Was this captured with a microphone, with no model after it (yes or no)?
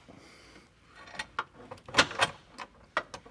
yes